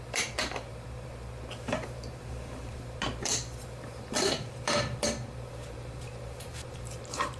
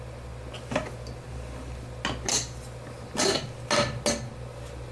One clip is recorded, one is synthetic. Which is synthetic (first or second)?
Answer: first